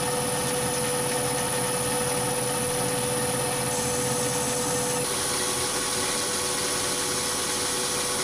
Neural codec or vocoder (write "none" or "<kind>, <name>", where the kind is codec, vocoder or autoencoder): none